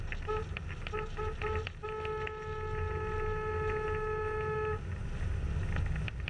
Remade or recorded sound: recorded